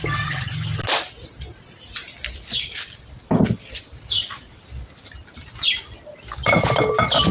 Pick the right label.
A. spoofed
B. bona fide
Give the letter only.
B